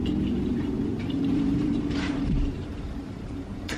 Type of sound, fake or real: fake